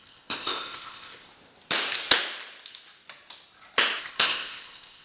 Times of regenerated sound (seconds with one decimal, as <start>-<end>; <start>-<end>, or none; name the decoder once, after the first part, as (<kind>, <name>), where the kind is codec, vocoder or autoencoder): 0.0-1.3 (codec, ZipCodec); 4.0-5.0